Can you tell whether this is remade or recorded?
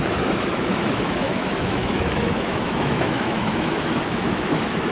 remade